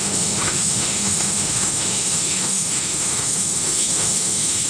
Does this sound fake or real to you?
fake